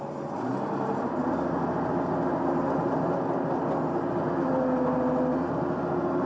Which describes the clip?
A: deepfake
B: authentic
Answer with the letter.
B